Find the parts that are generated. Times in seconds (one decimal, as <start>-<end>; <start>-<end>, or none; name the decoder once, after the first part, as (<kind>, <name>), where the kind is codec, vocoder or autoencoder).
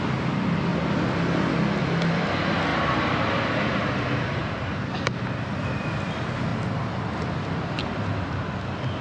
2.7-3.9 (vocoder, BigVGAN v2); 4.4-5.6